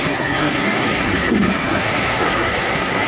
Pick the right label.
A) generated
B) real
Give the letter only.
A